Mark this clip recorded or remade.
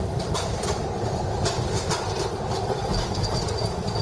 recorded